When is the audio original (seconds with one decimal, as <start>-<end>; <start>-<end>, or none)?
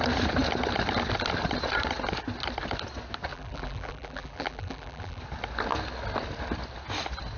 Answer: 0.0-3.3; 5.2-7.4